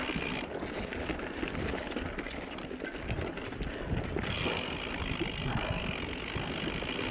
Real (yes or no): yes